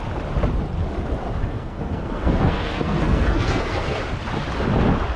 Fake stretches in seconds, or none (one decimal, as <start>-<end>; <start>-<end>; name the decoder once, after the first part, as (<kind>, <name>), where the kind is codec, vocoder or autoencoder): 1.4-4.0 (codec, SNAC)